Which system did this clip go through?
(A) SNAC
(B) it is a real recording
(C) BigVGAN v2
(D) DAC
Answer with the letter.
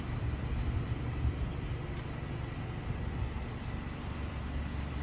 B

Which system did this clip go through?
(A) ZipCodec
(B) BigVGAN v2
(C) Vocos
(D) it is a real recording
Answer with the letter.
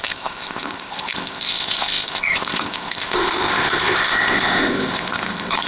A